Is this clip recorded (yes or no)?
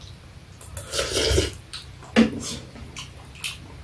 yes